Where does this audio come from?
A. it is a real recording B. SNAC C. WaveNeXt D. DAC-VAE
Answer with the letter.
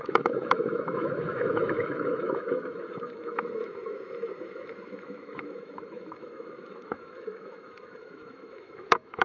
D